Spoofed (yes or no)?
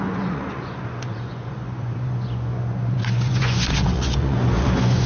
yes